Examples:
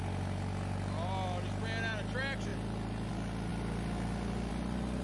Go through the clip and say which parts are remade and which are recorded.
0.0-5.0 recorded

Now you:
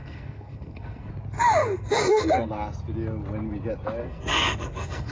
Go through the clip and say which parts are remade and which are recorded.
0.0-1.1 remade; 1.1-1.6 recorded; 1.6-2.5 remade; 2.5-4.0 recorded; 4.0-5.1 remade

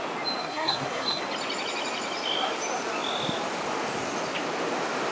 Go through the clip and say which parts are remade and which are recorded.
0.0-0.4 recorded; 0.4-1.2 remade; 1.2-5.1 recorded

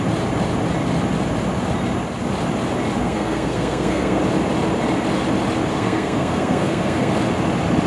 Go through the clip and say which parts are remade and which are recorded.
0.0-3.0 recorded; 3.0-4.2 remade; 4.2-5.7 recorded; 5.7-7.1 remade; 7.1-7.9 recorded

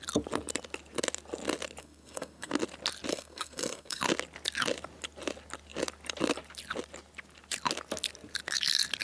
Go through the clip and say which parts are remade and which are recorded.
0.0-1.8 recorded; 1.8-2.5 remade; 2.5-3.1 recorded; 3.1-4.0 remade; 4.0-9.0 recorded

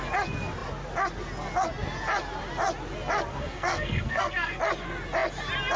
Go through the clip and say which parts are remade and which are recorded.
0.0-3.3 recorded; 3.3-4.6 remade; 4.6-5.8 recorded

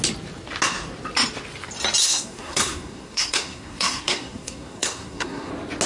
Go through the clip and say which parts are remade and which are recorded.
0.0-2.0 recorded; 2.0-5.5 remade; 5.5-5.9 recorded

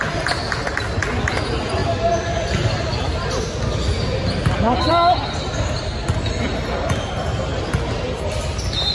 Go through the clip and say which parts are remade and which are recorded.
0.0-8.9 recorded